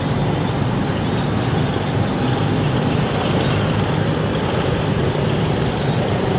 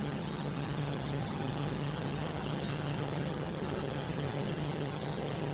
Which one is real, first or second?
first